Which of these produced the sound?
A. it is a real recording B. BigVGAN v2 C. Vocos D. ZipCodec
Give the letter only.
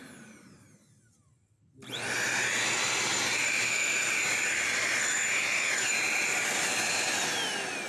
A